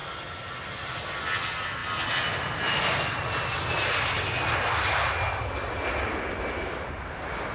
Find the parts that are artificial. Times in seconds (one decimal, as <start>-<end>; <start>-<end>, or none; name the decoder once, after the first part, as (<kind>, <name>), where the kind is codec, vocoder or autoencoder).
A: 0.0-1.2 (vocoder, BigVGAN v2)